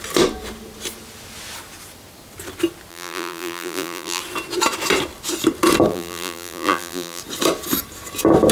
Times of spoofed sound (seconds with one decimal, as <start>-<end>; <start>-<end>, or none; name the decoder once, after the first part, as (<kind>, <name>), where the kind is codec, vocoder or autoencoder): 2.9-4.2 (vocoder, BigVGAN v2); 5.9-7.2

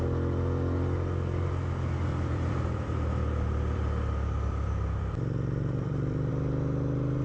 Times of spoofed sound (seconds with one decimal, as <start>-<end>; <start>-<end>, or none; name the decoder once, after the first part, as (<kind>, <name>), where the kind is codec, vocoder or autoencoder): 2.1-6.3 (vocoder, BigVGAN v2)

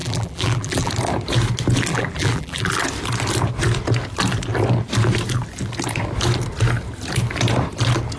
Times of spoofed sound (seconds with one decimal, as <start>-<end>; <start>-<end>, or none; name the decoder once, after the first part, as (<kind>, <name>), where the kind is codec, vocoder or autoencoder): 0.0-0.9 (vocoder, BigVGAN v2); 1.9-2.8

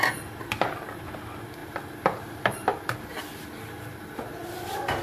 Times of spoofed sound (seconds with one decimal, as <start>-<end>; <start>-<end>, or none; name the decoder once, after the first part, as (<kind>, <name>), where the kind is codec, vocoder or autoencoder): 1.6-4.6 (vocoder, BigVGAN v2)

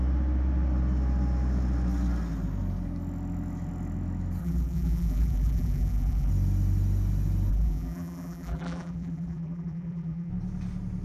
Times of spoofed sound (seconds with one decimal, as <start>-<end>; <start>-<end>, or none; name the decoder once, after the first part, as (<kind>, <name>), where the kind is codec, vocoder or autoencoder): 4.4-6.3 (vocoder, BigVGAN v2); 7.5-10.3

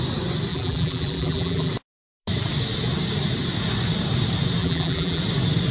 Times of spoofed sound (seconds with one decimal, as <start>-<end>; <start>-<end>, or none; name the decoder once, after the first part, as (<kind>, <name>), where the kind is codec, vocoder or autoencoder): 0.5-1.7 (vocoder, BigVGAN v2); 4.6-5.2

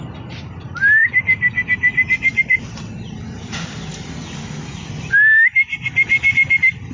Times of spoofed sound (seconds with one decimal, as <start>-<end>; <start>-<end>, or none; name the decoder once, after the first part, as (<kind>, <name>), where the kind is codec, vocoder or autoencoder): 1.0-5.1 (vocoder, BigVGAN v2)

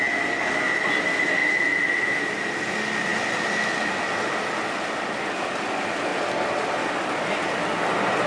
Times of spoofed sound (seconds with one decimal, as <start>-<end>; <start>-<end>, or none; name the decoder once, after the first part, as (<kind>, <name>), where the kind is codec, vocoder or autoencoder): 1.4-2.6 (vocoder, BigVGAN v2)